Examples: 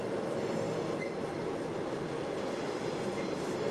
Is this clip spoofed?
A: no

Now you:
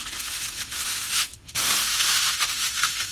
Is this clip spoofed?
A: yes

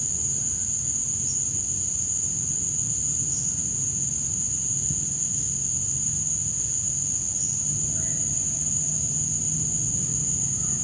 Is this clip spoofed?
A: no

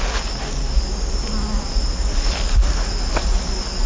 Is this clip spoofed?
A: no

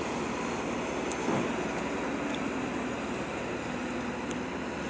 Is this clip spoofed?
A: no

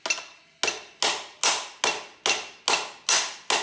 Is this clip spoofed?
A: no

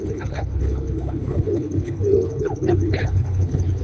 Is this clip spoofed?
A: yes